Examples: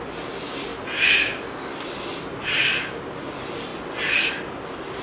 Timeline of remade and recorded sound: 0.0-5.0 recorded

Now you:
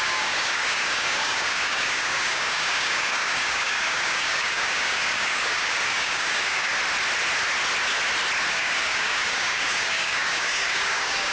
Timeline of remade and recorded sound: 0.0-6.7 remade; 6.7-8.5 recorded; 8.5-11.3 remade

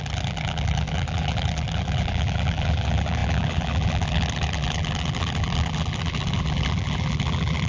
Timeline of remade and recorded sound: 0.0-7.7 remade

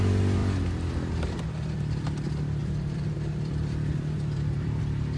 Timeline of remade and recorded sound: 0.0-0.4 recorded; 0.4-1.1 remade; 1.1-2.6 recorded; 2.6-4.8 remade; 4.8-5.2 recorded

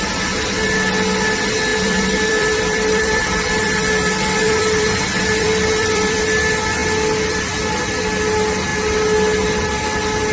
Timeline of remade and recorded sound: 0.0-1.7 recorded; 1.7-6.2 remade; 6.2-10.3 recorded

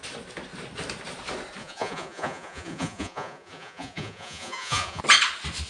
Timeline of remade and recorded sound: 0.0-1.6 recorded; 1.6-5.0 remade; 5.0-5.7 recorded